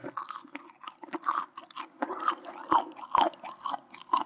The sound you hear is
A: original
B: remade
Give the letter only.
A